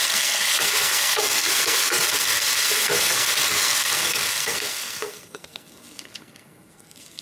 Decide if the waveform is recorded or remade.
remade